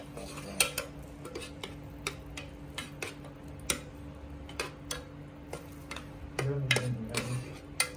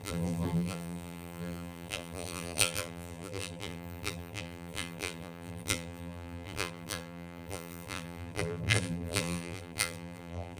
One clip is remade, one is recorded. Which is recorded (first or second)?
first